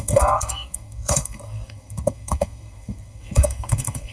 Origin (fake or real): fake